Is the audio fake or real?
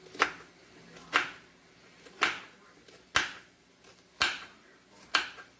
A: real